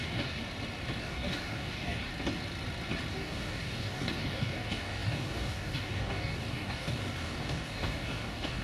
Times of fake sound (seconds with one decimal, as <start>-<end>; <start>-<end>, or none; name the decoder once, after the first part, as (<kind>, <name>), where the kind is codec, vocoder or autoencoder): 0.0-0.4 (codec, DAC); 1.0-2.1; 3.1-8.6